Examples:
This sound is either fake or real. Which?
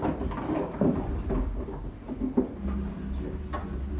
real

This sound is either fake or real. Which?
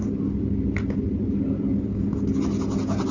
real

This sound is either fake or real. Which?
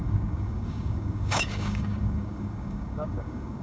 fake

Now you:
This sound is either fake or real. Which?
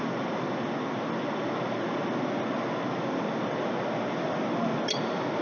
real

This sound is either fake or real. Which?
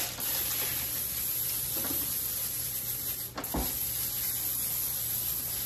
real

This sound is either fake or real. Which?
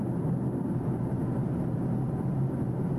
real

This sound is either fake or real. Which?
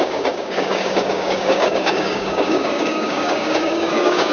fake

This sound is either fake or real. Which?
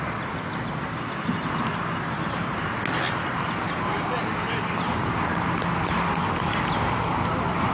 real